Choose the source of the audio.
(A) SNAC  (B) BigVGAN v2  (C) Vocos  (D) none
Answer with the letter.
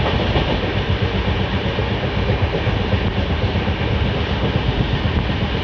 D